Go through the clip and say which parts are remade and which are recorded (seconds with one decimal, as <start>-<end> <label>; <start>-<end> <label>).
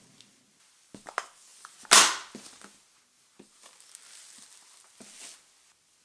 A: 0.0-6.0 recorded